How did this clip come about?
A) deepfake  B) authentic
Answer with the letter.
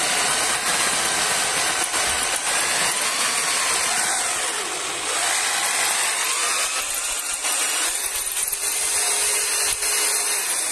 B